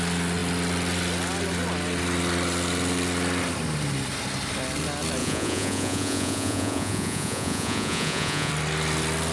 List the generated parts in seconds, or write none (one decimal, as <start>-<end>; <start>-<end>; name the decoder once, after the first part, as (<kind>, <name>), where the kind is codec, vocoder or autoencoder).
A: 5.2-8.5 (vocoder, Vocos)